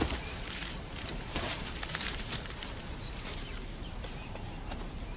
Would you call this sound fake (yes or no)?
yes